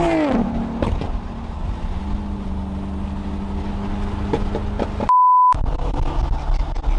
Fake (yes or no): no